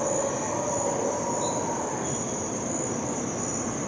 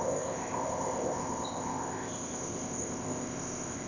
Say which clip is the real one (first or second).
first